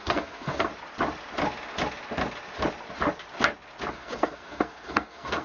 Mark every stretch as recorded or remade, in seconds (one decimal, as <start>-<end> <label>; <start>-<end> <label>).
0.0-0.7 remade; 0.7-3.9 recorded; 3.9-5.4 remade